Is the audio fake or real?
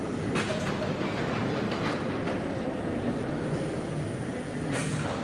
real